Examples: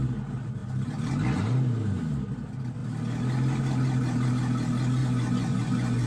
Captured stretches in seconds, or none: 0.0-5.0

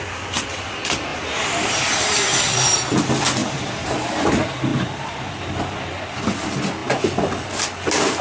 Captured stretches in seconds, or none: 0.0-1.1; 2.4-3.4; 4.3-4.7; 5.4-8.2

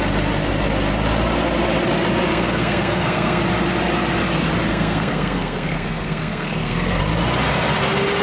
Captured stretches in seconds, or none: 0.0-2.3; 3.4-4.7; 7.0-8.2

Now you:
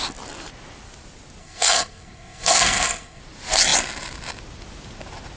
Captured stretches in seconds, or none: 0.0-1.4; 3.2-5.4